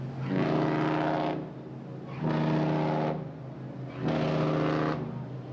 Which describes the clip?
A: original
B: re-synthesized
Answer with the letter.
A